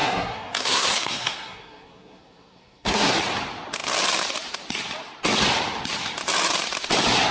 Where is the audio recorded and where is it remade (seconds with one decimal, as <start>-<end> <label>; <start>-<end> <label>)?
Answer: 0.0-3.2 remade; 3.2-7.3 recorded